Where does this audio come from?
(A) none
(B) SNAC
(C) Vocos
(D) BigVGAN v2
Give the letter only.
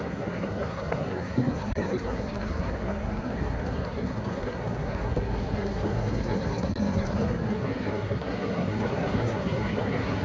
B